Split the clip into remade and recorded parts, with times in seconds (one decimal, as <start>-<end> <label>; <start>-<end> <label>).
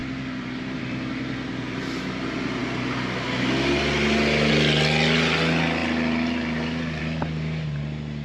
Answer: 0.0-0.8 remade; 0.8-8.2 recorded